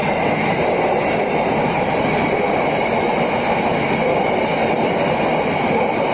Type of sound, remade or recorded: recorded